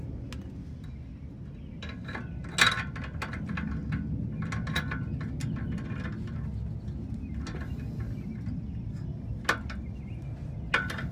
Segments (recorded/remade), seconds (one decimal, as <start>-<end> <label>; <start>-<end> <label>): 0.0-11.1 recorded